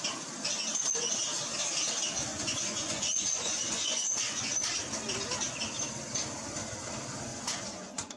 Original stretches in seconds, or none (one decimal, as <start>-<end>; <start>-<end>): 0.0-2.3; 4.5-7.3

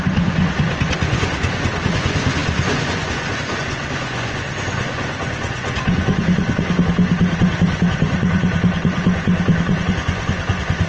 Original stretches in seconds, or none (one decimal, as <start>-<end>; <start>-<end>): none

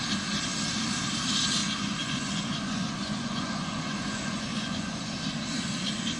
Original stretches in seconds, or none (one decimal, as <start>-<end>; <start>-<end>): 0.0-1.6; 5.1-6.2